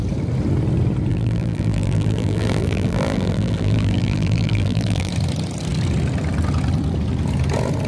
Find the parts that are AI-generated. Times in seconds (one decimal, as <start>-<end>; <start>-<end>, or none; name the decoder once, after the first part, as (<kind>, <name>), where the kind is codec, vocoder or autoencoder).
1.1-5.1 (vocoder, BigVGAN v2)

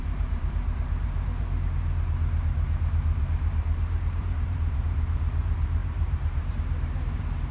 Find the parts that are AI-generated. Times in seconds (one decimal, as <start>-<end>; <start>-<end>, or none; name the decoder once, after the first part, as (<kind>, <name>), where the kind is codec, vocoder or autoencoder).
0.0-7.5 (vocoder, BigVGAN v2)

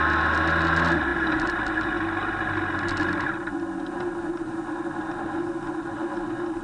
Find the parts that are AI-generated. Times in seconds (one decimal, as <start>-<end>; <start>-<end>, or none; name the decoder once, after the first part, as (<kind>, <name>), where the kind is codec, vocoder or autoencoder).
none

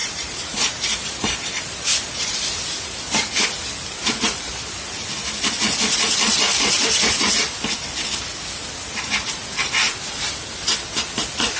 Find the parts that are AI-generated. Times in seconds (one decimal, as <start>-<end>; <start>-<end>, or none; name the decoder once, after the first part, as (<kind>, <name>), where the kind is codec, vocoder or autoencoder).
0.0-2.4 (vocoder, BigVGAN v2)

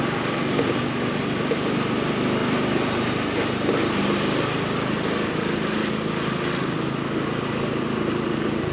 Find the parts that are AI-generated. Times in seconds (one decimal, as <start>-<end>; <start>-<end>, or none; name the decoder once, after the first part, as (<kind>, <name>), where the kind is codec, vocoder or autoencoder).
2.4-4.1 (vocoder, BigVGAN v2)

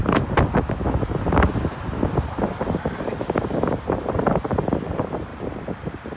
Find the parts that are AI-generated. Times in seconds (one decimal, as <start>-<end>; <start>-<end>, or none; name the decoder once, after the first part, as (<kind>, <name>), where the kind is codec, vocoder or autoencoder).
3.7-5.3 (vocoder, BigVGAN v2)

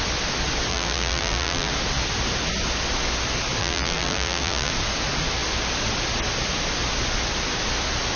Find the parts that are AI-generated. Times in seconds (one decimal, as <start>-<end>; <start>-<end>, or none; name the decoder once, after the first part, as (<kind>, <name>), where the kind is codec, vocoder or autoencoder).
0.7-1.7 (vocoder, BigVGAN v2); 3.6-4.7

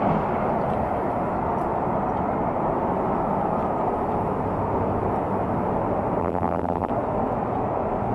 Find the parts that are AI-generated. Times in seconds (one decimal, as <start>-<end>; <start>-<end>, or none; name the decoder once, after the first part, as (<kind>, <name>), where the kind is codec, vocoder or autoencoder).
6.2-6.9 (vocoder, BigVGAN v2)